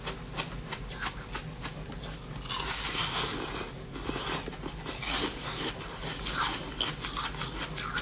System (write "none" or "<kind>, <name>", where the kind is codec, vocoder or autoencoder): none